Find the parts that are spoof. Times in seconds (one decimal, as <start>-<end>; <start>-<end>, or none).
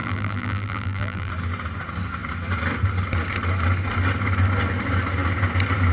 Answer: 0.0-1.3